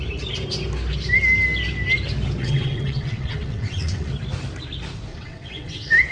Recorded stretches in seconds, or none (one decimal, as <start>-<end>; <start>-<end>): 0.0-2.4; 4.1-5.1